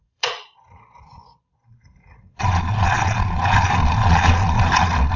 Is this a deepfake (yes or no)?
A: yes